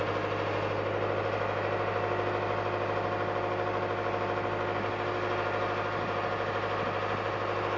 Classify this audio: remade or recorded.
recorded